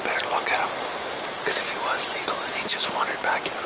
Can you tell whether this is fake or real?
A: real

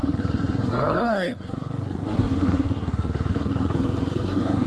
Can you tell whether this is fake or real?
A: fake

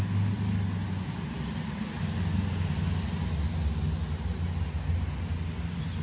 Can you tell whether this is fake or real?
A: real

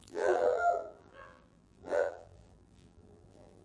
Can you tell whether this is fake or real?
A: fake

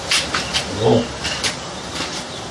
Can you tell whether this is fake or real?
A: real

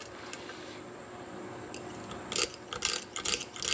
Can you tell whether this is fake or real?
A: real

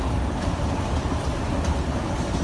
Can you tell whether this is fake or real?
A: real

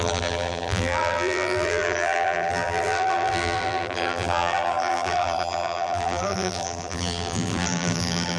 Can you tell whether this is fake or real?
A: fake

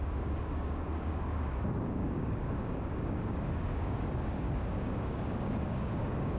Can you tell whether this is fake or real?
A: fake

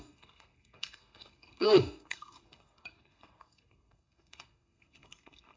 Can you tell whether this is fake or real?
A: fake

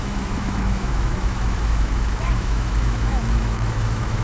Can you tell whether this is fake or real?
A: fake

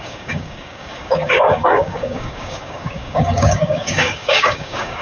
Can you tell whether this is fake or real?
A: fake